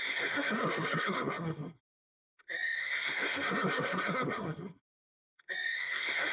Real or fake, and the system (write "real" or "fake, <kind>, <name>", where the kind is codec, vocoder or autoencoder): fake, codec, SNAC